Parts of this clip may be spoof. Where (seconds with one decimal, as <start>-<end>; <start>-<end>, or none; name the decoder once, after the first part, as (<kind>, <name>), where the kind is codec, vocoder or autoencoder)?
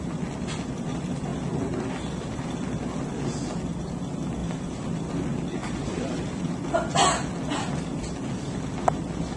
4.4-5.1 (vocoder, BigVGAN v2); 5.6-6.4